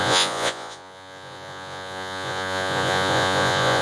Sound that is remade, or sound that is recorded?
remade